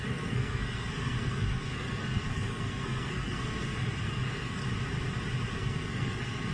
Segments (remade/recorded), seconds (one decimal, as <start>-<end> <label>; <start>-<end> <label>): 0.0-4.6 remade; 4.6-5.5 recorded; 5.5-6.5 remade